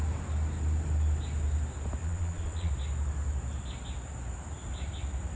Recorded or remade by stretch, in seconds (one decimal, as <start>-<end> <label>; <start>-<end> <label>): 0.0-2.0 recorded; 2.0-2.7 remade; 2.7-5.4 recorded

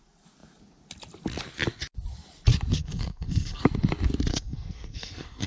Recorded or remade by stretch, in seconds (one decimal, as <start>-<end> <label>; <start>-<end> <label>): 0.0-2.8 recorded; 2.8-3.6 remade; 3.6-4.3 recorded; 4.3-5.5 remade

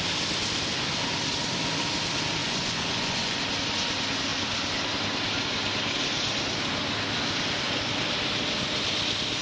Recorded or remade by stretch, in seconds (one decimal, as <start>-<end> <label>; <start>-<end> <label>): 0.0-2.4 recorded; 2.4-3.4 remade; 3.4-9.4 recorded

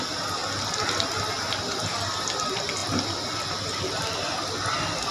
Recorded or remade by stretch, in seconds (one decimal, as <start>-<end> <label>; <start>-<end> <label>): 0.0-2.8 recorded; 2.8-5.1 remade